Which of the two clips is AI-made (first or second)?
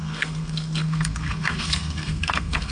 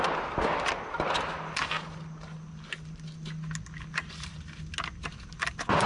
first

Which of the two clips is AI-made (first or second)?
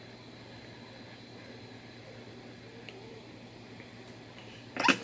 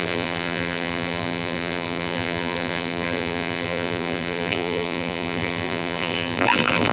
second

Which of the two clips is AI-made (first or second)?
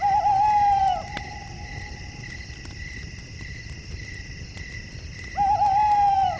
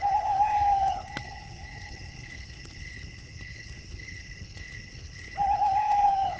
second